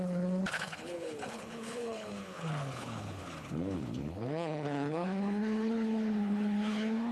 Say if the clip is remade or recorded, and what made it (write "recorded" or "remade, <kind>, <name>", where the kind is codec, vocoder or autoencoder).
remade, codec, HILCodec